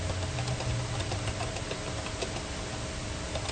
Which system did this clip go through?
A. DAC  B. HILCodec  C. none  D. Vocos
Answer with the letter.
C